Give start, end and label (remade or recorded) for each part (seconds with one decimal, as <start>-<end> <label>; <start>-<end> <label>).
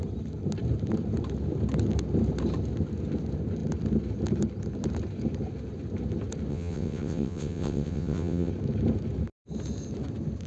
0.0-6.5 recorded; 6.5-8.5 remade; 8.5-10.5 recorded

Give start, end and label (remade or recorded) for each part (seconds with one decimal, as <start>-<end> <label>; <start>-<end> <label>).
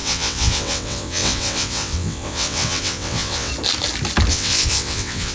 0.0-3.5 remade; 3.5-4.3 recorded; 4.3-5.3 remade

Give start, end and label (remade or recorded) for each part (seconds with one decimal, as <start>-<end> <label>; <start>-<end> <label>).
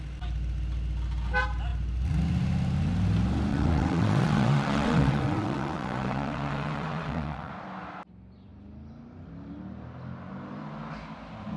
0.0-3.5 recorded; 3.5-7.5 remade; 7.5-11.6 recorded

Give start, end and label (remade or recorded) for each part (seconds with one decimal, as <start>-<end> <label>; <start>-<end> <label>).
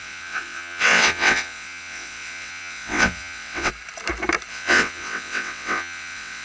0.0-3.7 remade; 3.7-4.5 recorded; 4.5-6.4 remade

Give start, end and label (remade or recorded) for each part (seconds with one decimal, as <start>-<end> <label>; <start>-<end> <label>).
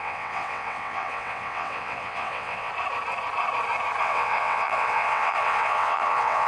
0.0-2.7 remade; 2.7-4.0 recorded; 4.0-6.5 remade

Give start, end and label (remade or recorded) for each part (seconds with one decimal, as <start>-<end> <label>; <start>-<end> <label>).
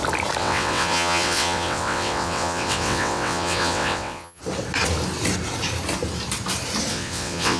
0.0-0.4 recorded; 0.4-4.4 remade; 4.4-6.9 recorded; 6.9-7.6 remade